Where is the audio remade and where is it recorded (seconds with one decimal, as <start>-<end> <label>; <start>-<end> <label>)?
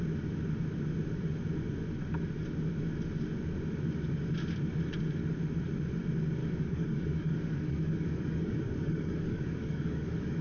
0.0-6.4 recorded; 6.4-10.4 remade